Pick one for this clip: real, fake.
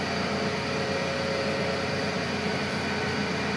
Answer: real